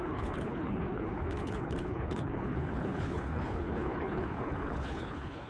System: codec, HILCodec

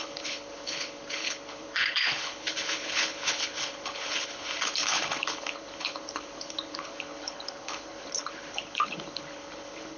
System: codec, HILCodec